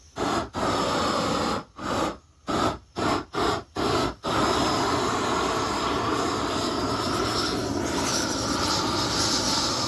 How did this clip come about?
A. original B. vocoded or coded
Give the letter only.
A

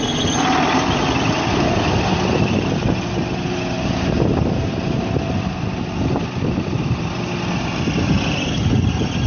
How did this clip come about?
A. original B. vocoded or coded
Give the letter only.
A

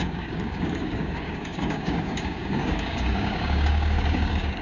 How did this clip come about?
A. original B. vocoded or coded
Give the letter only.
B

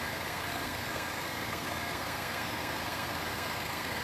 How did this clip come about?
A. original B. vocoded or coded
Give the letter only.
B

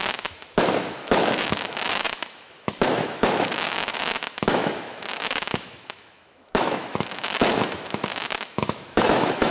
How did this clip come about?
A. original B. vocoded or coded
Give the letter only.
B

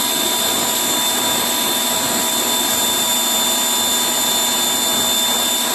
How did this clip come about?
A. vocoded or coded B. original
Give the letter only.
B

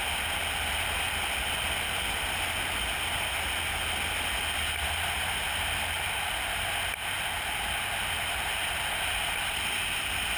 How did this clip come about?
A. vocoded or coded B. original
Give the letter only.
B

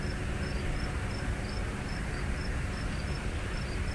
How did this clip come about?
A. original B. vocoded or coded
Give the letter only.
B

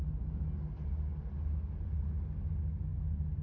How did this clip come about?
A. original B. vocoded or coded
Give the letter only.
A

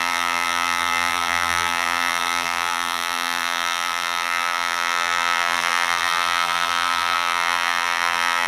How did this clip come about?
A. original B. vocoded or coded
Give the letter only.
B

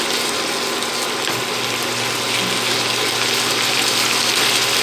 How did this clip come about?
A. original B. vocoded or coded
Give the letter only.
A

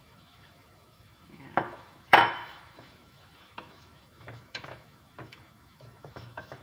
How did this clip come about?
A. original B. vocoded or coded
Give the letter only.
B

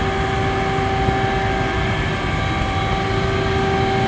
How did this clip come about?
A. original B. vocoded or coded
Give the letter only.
A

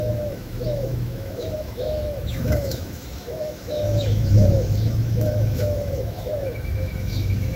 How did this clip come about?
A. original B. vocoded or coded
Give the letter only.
B